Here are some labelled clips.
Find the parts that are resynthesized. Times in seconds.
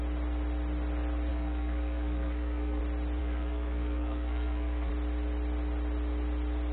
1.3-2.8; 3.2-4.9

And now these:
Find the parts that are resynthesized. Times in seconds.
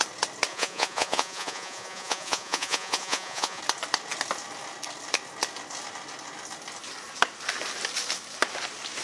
0.5-3.6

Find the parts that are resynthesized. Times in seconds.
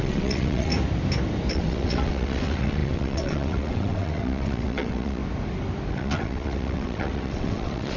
0.0-0.7; 1.5-5.2; 5.9-8.0